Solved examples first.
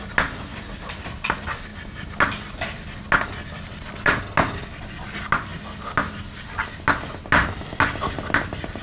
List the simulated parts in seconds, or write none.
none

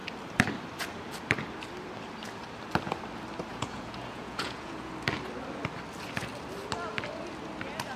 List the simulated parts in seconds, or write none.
3.5-4.9 (vocoder, Vocos)

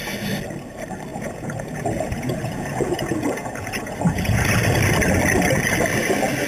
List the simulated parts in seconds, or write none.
1.1-4.5 (vocoder, Vocos)